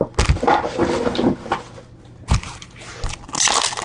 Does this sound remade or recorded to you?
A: recorded